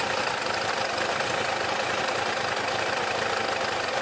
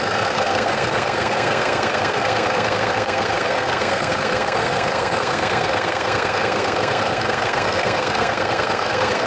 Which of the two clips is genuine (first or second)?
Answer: first